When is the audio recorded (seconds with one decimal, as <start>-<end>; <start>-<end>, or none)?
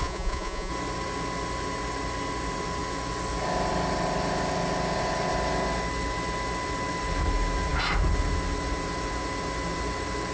0.7-10.3